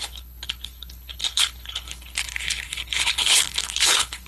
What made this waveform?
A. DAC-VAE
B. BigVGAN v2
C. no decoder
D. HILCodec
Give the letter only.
D